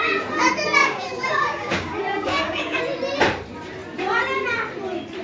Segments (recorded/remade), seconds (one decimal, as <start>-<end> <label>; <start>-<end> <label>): 0.0-0.8 recorded; 0.8-2.8 remade; 2.8-5.2 recorded